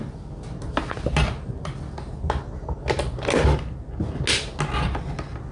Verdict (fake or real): real